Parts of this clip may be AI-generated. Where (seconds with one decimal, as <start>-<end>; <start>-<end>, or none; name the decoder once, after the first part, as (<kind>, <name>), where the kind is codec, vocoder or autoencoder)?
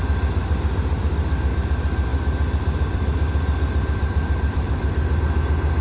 0.4-1.4 (vocoder, BigVGAN v2); 2.1-5.2